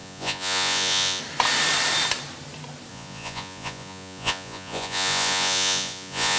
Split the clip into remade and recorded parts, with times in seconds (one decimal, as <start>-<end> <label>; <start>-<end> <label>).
0.0-1.2 remade; 1.2-2.9 recorded; 2.9-6.4 remade